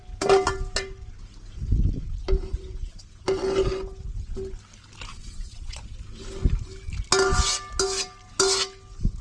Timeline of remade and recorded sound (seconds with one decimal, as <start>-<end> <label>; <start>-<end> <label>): 0.0-5.1 recorded; 5.1-5.8 remade; 5.8-9.2 recorded